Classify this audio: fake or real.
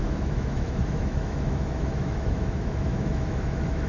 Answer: fake